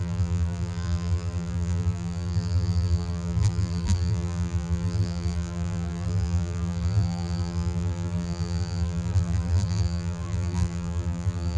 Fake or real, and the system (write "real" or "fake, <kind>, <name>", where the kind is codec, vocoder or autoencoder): fake, vocoder, BigVGAN v2